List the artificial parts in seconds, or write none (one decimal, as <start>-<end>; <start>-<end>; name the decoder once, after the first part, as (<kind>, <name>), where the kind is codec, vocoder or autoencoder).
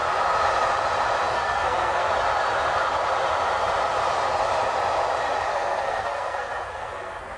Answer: 1.3-2.1 (codec, SNAC); 5.5-7.4